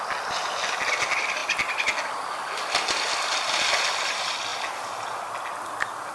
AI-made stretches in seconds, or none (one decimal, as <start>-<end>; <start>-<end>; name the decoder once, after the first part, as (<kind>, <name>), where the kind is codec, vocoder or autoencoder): none